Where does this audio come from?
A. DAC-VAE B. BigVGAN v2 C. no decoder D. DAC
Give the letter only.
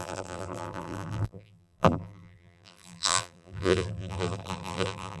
B